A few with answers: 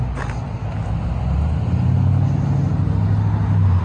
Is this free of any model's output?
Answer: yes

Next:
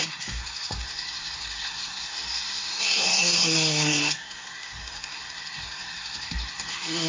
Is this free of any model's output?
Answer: no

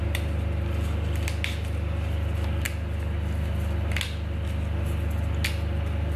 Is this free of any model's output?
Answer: yes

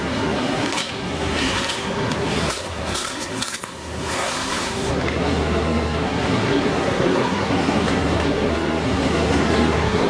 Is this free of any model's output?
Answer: no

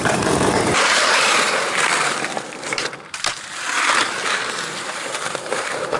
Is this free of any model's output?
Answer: no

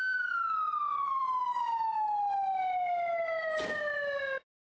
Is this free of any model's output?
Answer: yes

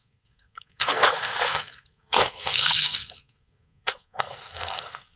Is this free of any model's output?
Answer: no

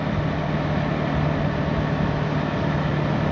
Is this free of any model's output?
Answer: yes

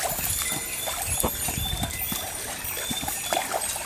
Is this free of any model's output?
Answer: no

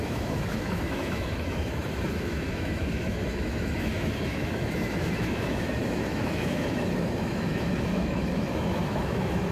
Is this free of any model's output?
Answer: no